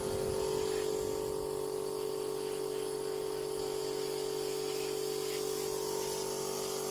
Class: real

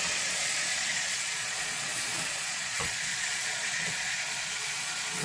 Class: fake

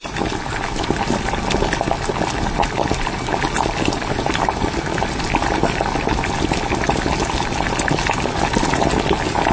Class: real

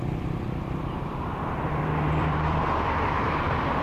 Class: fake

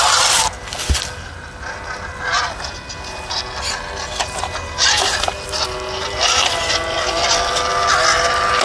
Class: real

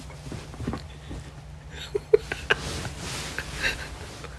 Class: real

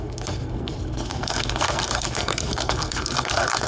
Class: fake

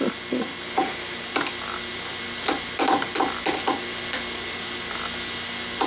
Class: real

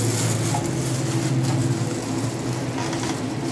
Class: real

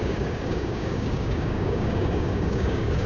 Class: fake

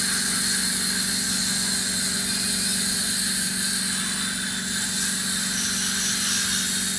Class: real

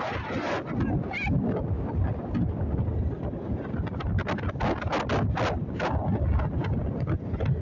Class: real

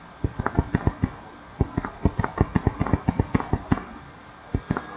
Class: real